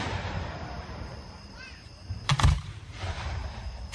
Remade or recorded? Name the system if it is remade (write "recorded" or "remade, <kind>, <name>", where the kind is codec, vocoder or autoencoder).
remade, vocoder, BigVGAN v2